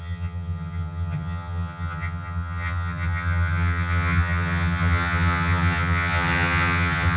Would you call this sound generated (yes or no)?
yes